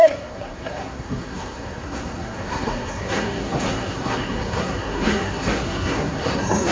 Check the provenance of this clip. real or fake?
fake